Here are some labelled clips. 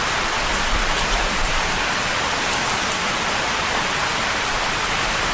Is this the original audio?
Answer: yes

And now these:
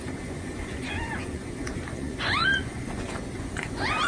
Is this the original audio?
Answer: no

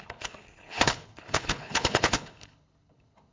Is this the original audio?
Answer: no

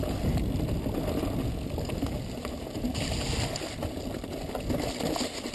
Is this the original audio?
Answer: yes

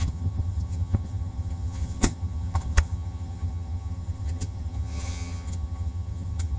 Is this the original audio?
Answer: no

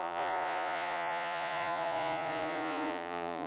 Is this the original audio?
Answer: no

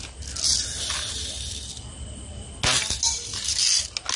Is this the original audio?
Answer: yes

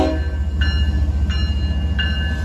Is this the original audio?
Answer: yes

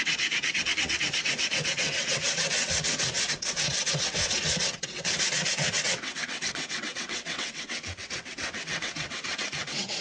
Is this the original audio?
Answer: no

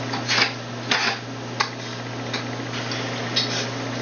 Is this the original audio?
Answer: yes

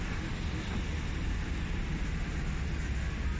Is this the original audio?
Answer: yes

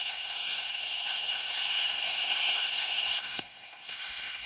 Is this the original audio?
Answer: no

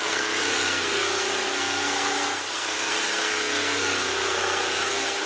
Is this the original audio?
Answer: no